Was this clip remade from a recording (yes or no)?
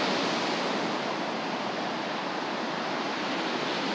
no